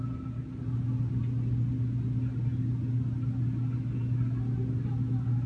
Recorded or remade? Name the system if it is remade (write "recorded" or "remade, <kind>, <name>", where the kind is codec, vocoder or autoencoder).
recorded